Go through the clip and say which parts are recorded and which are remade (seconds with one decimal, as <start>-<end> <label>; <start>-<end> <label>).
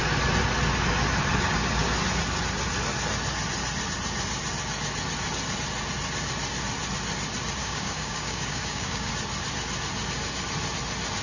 0.0-7.6 recorded; 7.6-9.1 remade; 9.1-11.2 recorded